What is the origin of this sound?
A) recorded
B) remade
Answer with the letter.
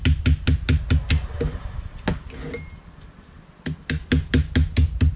A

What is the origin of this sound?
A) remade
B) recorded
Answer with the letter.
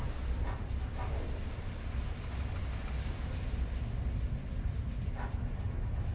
B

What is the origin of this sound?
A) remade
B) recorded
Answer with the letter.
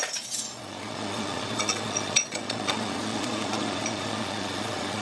A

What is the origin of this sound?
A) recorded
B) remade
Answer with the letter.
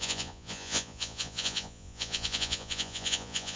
B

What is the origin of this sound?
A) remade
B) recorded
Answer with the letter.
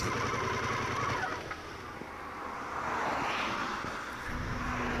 B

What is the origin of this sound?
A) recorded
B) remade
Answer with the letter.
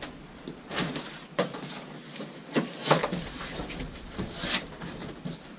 A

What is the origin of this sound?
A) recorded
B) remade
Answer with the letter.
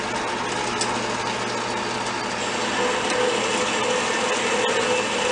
A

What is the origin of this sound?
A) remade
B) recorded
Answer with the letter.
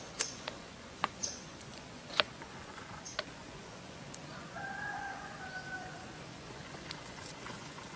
A